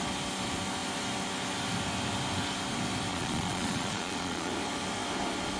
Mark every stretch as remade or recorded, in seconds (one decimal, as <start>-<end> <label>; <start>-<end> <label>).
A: 0.0-3.1 recorded; 3.1-4.5 remade; 4.5-5.6 recorded

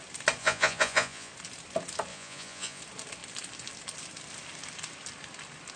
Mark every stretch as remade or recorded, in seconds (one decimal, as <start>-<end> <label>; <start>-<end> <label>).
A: 0.0-0.4 recorded; 0.4-1.3 remade; 1.3-2.1 recorded; 2.1-2.8 remade; 2.8-5.8 recorded

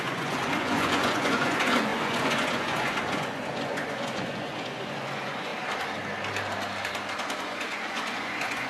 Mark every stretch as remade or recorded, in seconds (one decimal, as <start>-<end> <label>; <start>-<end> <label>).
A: 0.0-5.5 remade; 5.5-7.4 recorded; 7.4-8.7 remade